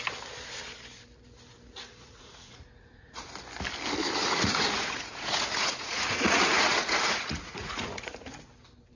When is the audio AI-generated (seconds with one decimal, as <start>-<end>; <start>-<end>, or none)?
1.9-3.3; 4.2-8.4

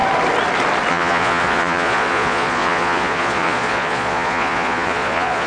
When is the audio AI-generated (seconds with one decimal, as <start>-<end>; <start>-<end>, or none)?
0.9-5.5

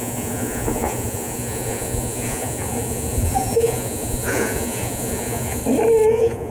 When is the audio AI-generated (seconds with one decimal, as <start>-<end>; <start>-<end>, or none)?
0.0-5.6; 6.1-6.5

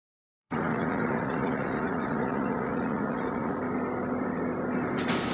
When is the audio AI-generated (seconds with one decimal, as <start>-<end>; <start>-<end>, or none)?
0.4-3.6

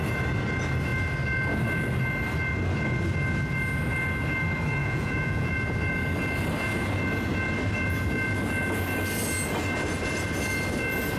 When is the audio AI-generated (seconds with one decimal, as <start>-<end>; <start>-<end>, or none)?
4.8-5.5

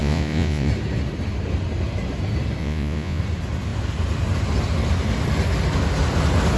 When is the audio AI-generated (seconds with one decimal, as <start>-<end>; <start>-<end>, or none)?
0.0-0.7; 2.6-3.2